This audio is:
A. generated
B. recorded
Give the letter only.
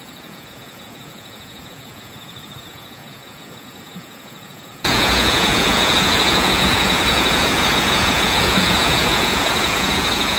A